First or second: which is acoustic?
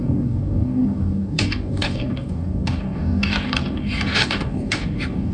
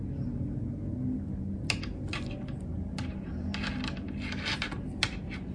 second